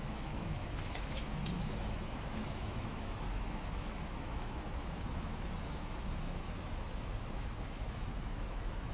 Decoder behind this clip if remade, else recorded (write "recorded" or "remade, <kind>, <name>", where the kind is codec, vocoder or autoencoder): remade, autoencoder, DAC-VAE